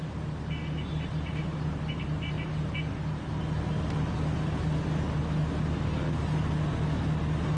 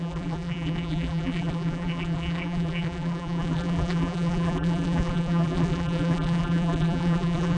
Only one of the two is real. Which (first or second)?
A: first